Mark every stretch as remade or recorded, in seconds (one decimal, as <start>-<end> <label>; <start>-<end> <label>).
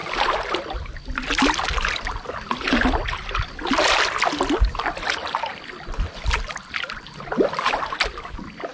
0.0-8.7 recorded